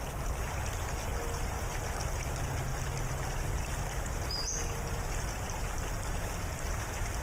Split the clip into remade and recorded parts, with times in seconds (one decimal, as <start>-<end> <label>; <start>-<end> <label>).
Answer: 0.0-7.2 recorded